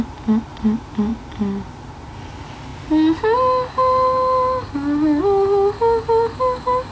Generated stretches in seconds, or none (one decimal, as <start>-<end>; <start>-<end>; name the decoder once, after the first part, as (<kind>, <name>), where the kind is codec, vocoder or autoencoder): none